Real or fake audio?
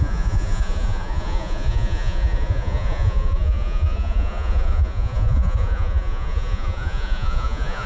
fake